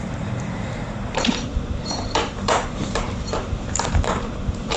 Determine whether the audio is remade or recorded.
remade